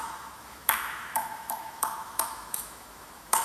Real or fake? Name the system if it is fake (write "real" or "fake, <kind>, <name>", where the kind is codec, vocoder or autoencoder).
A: fake, autoencoder, DAC-VAE